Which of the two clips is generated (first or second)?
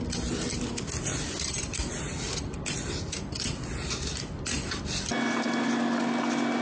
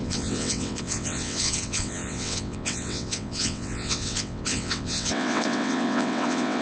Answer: second